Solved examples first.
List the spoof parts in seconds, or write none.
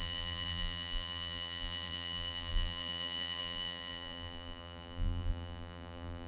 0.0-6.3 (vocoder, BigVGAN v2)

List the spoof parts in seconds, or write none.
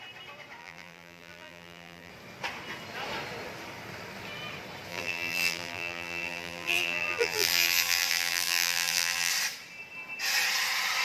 0.6-2.1 (vocoder, BigVGAN v2); 4.9-9.3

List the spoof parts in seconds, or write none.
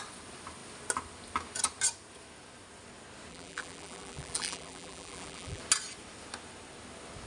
3.3-5.6 (vocoder, BigVGAN v2)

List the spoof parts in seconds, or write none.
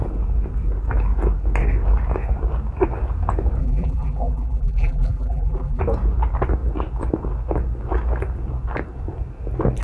3.6-5.8 (vocoder, BigVGAN v2)